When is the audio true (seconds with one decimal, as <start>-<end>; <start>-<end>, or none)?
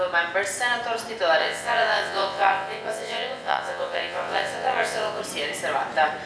0.0-1.4; 5.2-6.3